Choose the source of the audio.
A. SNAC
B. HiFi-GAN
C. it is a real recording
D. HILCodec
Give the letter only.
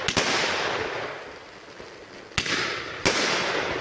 C